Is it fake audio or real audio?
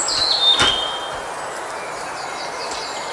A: real